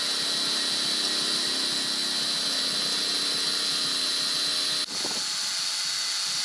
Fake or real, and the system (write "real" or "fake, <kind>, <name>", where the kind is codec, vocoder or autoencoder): real